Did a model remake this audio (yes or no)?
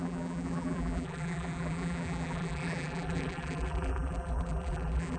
yes